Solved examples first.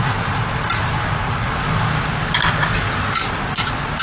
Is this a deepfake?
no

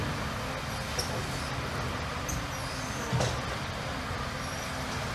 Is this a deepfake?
no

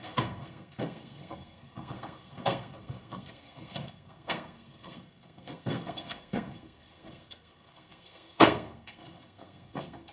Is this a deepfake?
yes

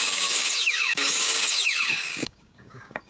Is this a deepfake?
yes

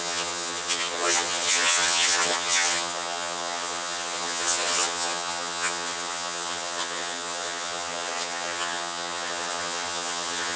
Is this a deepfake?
yes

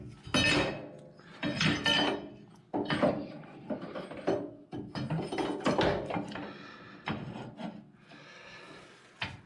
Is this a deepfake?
no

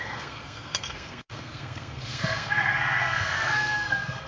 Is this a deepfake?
yes